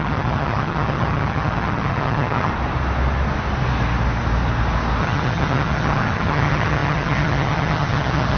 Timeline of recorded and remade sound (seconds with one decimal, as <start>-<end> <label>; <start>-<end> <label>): 0.0-2.5 remade; 2.5-5.0 recorded; 5.0-8.4 remade